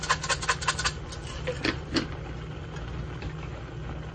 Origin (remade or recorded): recorded